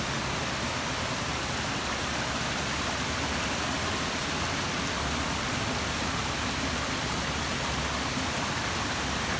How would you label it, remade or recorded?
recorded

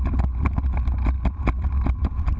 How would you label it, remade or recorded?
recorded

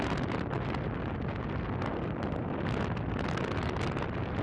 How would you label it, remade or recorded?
recorded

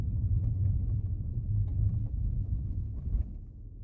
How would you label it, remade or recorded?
recorded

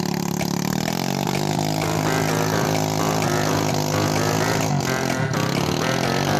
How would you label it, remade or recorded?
recorded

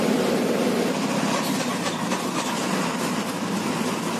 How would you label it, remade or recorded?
recorded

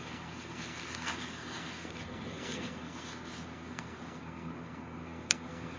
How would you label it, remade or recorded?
remade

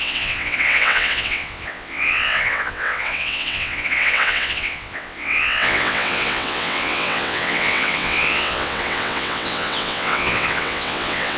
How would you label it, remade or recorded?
remade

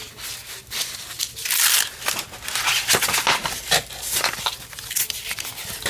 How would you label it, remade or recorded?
recorded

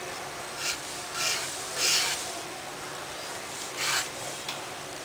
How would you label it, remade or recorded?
recorded